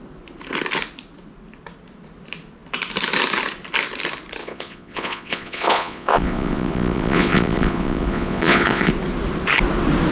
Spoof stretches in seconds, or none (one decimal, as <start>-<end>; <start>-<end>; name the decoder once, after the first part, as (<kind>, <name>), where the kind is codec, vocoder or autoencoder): 4.4-8.9 (vocoder, Vocos)